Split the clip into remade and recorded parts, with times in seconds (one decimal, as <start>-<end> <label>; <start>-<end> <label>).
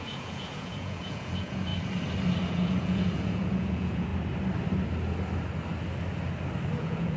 0.0-1.7 remade; 1.7-2.5 recorded; 2.5-4.1 remade; 4.1-6.8 recorded; 6.8-7.2 remade